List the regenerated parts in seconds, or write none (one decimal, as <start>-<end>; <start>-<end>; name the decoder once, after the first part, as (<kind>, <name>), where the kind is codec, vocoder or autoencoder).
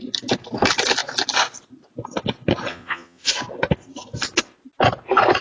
2.7-3.3 (vocoder, Vocos)